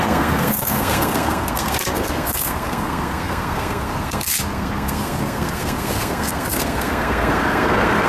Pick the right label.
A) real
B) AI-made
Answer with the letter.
B